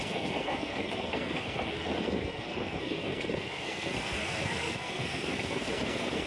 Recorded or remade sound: remade